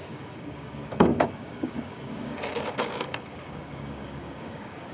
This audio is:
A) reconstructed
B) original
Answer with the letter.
A